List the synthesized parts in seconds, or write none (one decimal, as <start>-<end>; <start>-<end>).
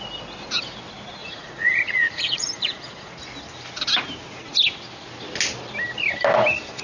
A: 1.2-3.1